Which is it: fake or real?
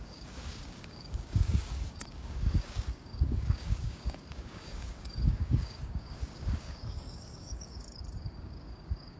fake